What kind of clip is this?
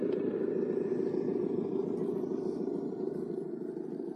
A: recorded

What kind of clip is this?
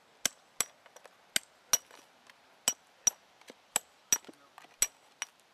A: recorded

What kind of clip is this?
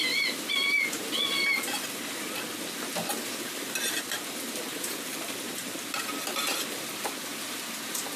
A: recorded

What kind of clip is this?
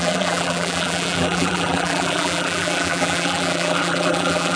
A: remade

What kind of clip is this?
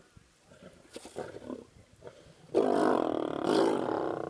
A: recorded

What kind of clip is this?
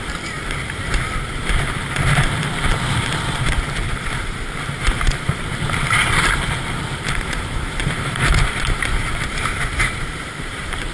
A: remade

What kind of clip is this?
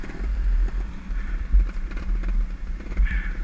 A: remade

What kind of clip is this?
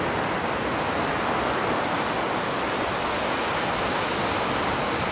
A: recorded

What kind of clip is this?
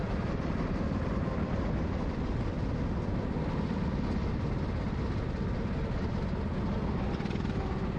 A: recorded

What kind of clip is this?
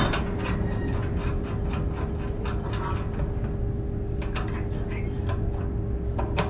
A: recorded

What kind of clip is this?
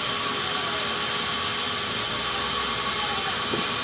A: recorded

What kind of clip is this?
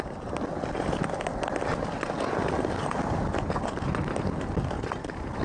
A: recorded